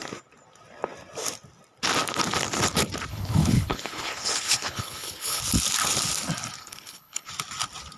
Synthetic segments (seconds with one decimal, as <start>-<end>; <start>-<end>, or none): 3.1-5.4; 6.6-7.3